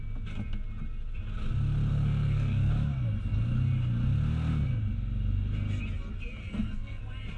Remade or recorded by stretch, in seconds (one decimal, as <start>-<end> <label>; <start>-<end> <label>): 0.0-1.9 recorded; 1.9-2.7 remade; 2.7-6.4 recorded; 6.4-7.0 remade; 7.0-7.4 recorded